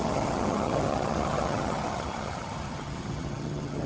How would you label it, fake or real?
fake